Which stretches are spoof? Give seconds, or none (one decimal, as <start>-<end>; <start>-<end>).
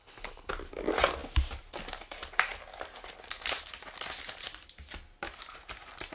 0.0-0.5